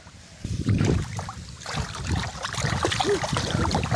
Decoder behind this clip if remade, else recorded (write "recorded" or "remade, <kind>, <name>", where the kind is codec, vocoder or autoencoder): remade, vocoder, BigVGAN v2